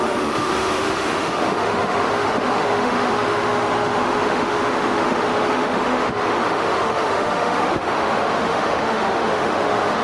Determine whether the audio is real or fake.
fake